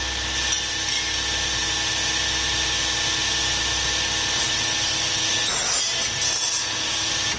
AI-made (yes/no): no